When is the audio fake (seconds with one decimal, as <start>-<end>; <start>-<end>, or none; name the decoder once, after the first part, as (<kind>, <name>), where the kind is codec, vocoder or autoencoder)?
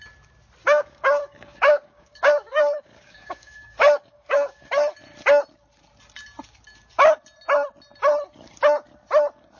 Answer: 0.6-4.7 (codec, DAC)